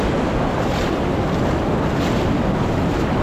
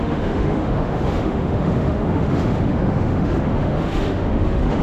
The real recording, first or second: first